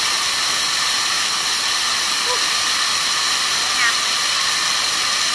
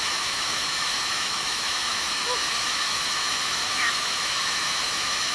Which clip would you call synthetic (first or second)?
second